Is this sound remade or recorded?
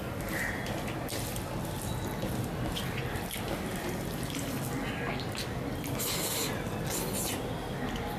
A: recorded